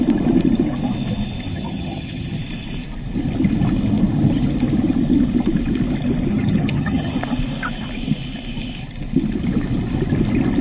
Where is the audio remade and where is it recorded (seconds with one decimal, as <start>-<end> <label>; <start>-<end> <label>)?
0.0-1.5 recorded; 1.5-2.4 remade; 2.4-6.3 recorded; 6.3-7.2 remade; 7.2-10.6 recorded